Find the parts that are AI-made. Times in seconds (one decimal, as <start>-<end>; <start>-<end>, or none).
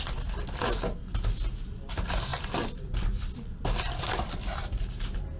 2.3-4.8